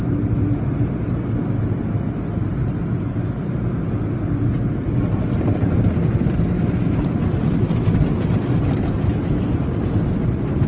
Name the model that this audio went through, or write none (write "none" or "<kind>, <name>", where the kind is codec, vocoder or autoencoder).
none